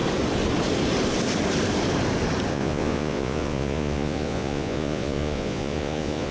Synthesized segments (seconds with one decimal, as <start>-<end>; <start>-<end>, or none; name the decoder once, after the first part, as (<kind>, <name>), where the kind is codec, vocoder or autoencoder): 2.5-6.3 (vocoder, Vocos)